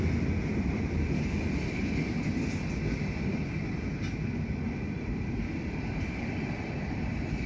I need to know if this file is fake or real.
real